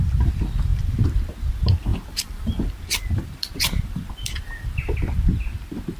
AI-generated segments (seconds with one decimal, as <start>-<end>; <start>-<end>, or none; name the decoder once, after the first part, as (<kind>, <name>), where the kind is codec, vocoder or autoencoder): 1.9-5.0 (vocoder, BigVGAN v2)